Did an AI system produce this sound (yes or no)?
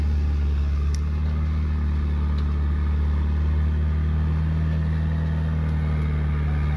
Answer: no